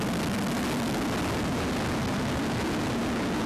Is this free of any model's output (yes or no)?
yes